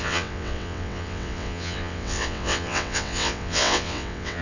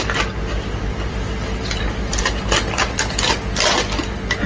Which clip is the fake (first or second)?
first